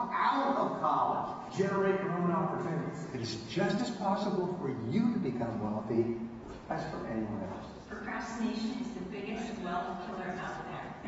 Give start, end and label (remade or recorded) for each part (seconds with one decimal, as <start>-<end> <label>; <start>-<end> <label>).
0.0-3.0 remade; 3.0-3.8 recorded; 3.8-4.5 remade; 4.5-5.3 recorded; 5.3-11.1 remade